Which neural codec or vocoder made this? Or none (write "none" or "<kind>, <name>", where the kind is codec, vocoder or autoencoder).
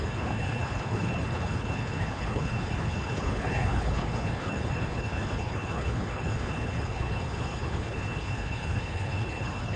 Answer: codec, HILCodec